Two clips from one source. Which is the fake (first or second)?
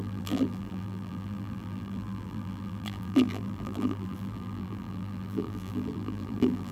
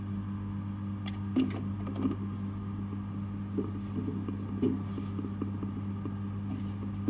first